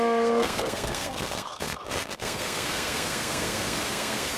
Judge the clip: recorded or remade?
remade